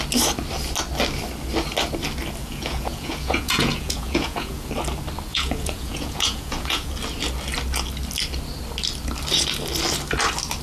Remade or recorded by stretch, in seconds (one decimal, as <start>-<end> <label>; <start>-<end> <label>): 0.0-2.4 recorded; 2.4-4.7 remade; 4.7-5.3 recorded; 5.3-6.9 remade; 6.9-10.6 recorded